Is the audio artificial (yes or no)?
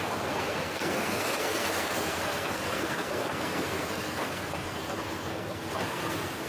yes